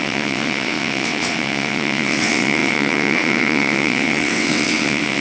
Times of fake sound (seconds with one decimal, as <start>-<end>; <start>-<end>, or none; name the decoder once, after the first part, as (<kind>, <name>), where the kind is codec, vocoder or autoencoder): 0.0-5.2 (vocoder, WaveNeXt)